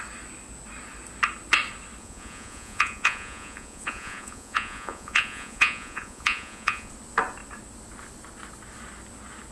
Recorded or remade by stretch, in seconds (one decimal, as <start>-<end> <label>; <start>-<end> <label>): 0.0-2.0 recorded; 2.0-6.9 remade; 6.9-9.5 recorded